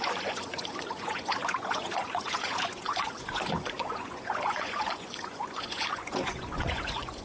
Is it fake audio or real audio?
fake